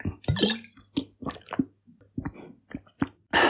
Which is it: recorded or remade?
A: recorded